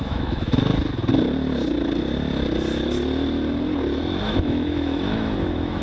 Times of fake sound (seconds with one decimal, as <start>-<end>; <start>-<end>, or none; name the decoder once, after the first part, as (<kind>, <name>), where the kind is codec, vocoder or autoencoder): 0.0-0.7 (autoencoder, DAC-VAE); 4.2-5.8